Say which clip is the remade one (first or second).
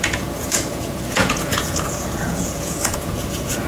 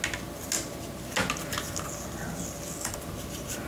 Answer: first